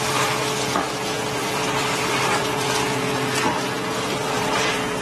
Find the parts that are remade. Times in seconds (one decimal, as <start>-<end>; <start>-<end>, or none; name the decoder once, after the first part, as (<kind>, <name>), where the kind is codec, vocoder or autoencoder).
1.4-2.4 (vocoder, BigVGAN v2); 4.2-5.0